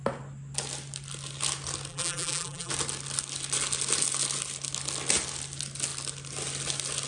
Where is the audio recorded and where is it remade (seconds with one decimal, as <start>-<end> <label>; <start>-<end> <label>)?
0.0-1.9 recorded; 1.9-2.7 remade; 2.7-7.1 recorded